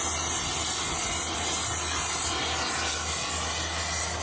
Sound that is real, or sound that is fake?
real